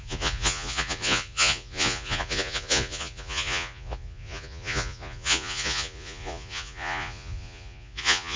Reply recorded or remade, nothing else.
remade